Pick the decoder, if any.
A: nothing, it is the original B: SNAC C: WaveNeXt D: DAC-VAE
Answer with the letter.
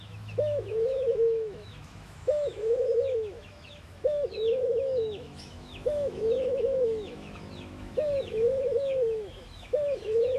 D